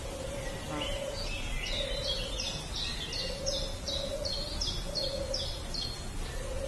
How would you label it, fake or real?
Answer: real